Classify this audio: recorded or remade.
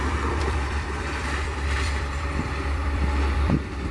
remade